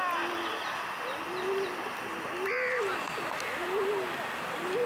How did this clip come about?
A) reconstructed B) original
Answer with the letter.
B